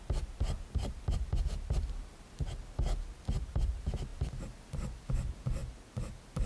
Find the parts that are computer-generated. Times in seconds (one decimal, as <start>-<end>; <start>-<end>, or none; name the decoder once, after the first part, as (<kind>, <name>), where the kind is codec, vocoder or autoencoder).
none